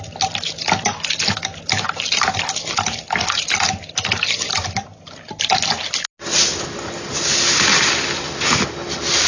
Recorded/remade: recorded